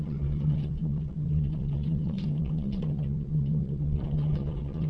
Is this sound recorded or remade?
remade